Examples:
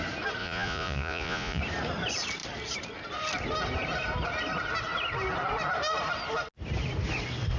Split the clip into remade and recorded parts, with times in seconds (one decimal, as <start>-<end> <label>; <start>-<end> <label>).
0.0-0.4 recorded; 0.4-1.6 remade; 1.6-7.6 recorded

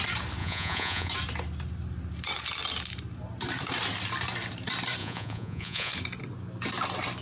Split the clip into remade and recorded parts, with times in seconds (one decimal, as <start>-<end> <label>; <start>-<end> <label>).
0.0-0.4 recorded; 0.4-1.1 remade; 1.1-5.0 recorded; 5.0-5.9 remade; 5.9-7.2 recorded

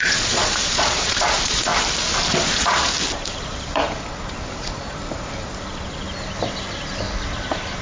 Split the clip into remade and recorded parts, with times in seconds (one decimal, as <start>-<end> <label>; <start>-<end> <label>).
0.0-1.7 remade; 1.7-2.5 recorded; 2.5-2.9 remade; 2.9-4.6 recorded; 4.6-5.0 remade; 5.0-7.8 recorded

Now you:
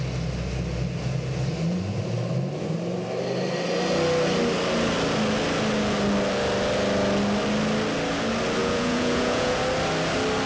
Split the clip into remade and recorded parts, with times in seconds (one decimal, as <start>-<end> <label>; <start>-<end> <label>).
0.0-8.6 recorded; 8.6-9.6 remade; 9.6-10.5 recorded

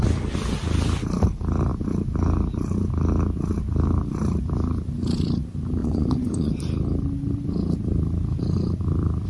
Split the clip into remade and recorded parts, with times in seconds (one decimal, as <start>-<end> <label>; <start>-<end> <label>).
0.0-5.8 recorded; 5.8-6.5 remade; 6.5-9.3 recorded